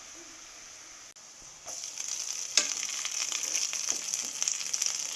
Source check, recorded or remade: recorded